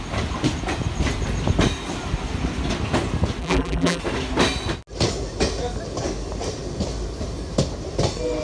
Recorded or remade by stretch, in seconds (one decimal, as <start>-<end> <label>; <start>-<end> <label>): 0.0-3.4 recorded; 3.4-4.0 remade; 4.0-8.4 recorded